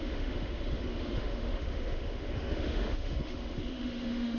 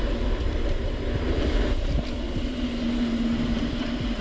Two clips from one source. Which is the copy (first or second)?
first